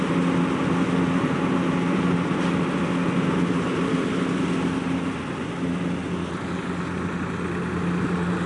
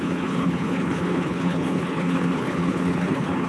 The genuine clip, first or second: first